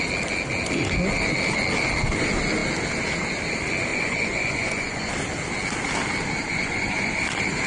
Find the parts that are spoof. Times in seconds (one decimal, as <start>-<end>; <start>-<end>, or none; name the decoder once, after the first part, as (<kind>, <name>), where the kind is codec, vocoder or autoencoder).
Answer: 3.9-5.1 (vocoder, Vocos); 6.5-7.2